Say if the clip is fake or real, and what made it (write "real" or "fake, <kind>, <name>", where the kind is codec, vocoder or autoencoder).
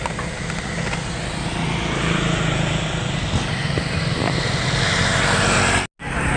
real